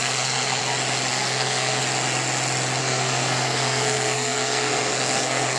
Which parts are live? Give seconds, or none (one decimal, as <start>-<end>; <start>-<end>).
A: 0.6-1.1; 1.8-2.8